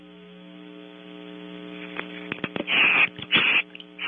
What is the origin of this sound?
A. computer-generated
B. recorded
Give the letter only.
B